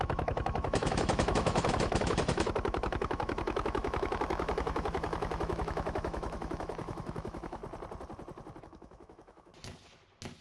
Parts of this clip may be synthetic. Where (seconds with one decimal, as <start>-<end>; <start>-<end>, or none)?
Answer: 0.0-7.6; 8.6-9.5